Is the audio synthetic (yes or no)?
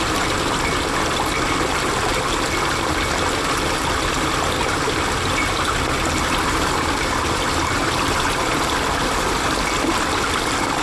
no